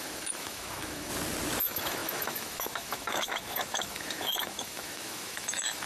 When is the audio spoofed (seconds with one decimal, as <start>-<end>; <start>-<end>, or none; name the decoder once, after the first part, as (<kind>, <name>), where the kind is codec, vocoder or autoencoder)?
0.0-1.1 (autoencoder, DAC-VAE); 1.6-5.9